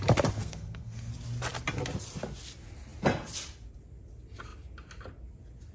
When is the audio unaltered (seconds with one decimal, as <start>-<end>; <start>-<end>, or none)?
0.0-0.4; 1.1-5.7